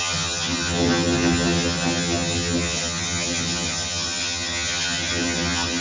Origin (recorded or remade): remade